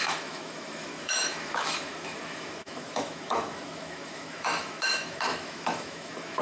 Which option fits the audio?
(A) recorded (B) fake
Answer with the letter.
B